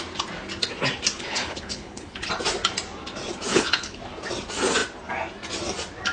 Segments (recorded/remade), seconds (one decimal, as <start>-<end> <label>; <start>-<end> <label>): 0.0-1.3 recorded; 1.3-2.3 remade; 2.3-3.5 recorded; 3.5-4.0 remade; 4.0-6.1 recorded